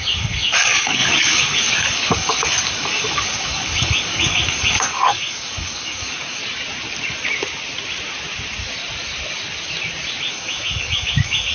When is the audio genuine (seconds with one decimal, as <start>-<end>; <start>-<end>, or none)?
6.4-10.3